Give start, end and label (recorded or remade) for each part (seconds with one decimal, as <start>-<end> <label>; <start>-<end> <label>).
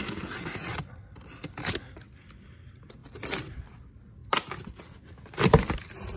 0.0-0.7 recorded; 0.7-1.4 remade; 1.4-3.0 recorded; 3.0-3.6 remade; 3.6-4.2 recorded; 4.2-5.8 remade; 5.8-6.2 recorded